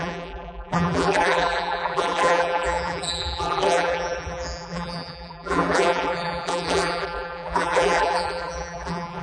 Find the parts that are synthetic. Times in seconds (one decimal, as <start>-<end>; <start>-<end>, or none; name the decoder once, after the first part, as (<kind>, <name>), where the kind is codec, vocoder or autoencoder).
0.0-9.2 (vocoder, BigVGAN v2)